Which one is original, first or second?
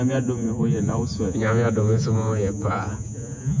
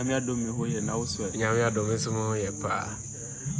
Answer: second